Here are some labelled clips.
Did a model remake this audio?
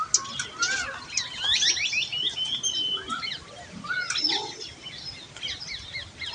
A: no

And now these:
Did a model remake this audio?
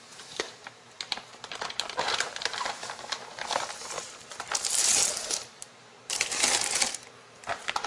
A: yes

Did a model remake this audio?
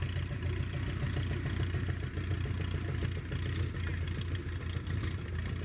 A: no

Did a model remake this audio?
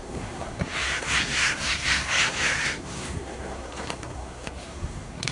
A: yes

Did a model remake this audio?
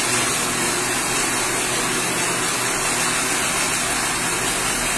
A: no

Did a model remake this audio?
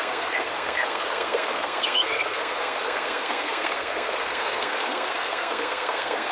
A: yes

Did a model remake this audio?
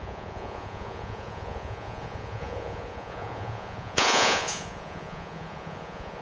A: yes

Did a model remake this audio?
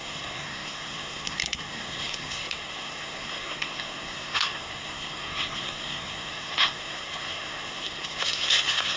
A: yes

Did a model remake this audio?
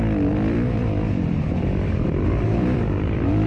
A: yes